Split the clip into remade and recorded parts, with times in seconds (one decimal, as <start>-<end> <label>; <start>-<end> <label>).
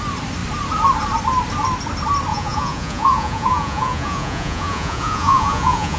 0.0-2.3 recorded; 2.3-6.0 remade